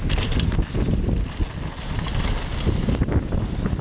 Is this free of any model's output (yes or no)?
yes